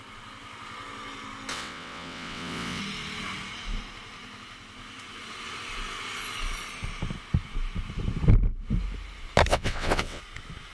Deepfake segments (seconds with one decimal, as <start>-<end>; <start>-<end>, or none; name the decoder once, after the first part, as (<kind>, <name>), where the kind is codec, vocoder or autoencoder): 1.5-2.8 (vocoder, WaveNeXt); 9.5-10.2